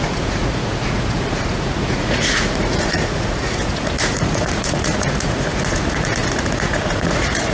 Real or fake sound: fake